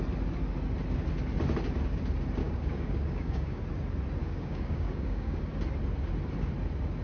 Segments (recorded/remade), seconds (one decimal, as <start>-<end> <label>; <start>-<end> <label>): 0.0-2.4 recorded; 2.4-3.6 remade; 3.6-4.2 recorded; 4.2-5.4 remade; 5.4-7.0 recorded